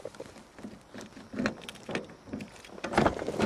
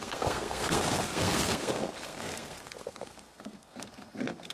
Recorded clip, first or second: first